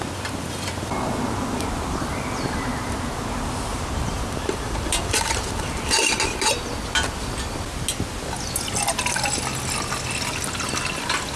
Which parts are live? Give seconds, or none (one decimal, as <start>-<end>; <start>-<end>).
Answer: 0.0-3.7; 5.6-11.4